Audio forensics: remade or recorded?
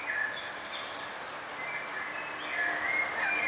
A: recorded